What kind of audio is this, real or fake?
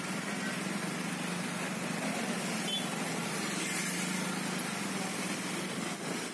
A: real